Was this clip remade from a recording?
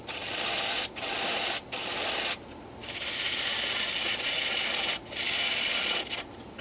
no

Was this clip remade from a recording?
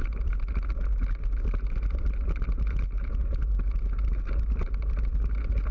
no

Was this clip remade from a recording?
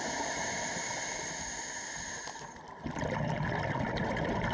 no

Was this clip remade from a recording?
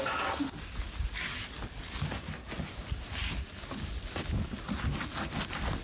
no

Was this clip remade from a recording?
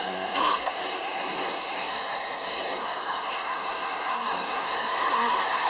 yes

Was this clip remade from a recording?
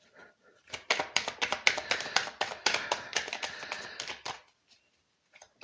yes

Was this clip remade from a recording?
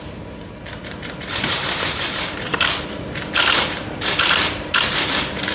yes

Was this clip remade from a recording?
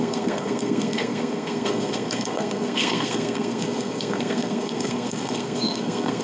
yes